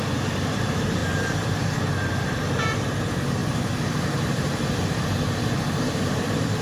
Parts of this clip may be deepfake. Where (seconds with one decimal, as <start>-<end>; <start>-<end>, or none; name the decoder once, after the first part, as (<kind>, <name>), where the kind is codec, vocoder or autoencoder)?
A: 0.0-6.6 (vocoder, BigVGAN v2)